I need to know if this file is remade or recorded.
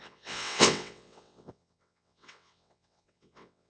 remade